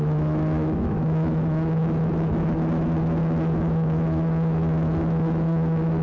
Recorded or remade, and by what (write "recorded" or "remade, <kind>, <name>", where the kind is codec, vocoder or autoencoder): remade, autoencoder, DAC-VAE